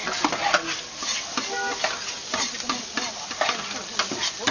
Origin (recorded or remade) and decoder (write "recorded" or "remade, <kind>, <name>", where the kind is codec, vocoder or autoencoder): recorded